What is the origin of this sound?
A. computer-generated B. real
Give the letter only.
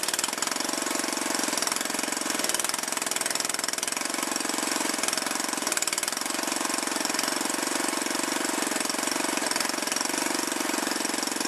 A